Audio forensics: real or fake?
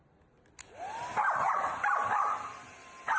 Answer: real